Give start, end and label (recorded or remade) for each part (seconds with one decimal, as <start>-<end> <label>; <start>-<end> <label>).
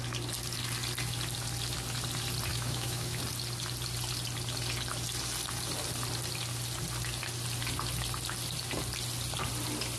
0.0-2.5 recorded; 2.5-3.2 remade; 3.2-10.0 recorded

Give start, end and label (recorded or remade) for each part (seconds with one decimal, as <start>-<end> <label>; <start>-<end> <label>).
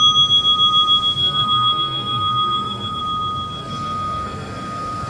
0.0-1.2 recorded; 1.2-3.0 remade; 3.0-3.6 recorded; 3.6-5.1 remade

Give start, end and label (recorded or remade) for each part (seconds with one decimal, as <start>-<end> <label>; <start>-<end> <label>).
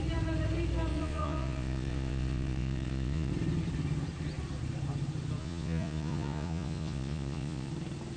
0.0-0.9 recorded; 0.9-3.3 remade; 3.3-5.4 recorded; 5.4-7.7 remade; 7.7-8.2 recorded